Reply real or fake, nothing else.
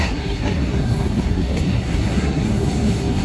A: fake